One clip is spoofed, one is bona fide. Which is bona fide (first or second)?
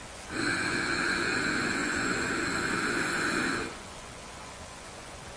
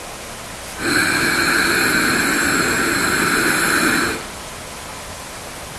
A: second